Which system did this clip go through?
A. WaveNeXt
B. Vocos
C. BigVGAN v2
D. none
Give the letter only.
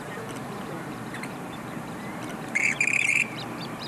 C